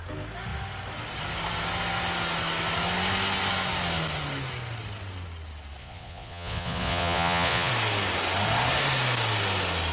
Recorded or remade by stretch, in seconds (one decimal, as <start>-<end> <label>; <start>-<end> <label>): 0.0-5.8 recorded; 5.8-7.7 remade; 7.7-9.9 recorded